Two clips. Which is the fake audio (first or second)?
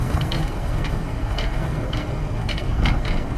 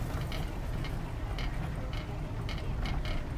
first